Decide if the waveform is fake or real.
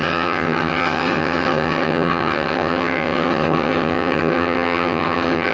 fake